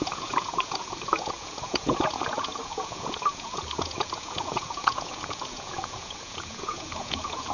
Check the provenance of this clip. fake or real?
fake